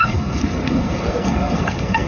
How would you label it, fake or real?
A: fake